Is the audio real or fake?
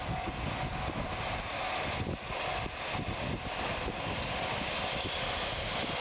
real